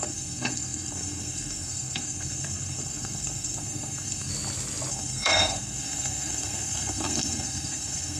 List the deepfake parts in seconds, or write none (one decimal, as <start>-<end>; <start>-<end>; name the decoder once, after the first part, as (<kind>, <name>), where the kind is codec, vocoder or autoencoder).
0.0-4.3 (codec, SNAC); 4.9-8.2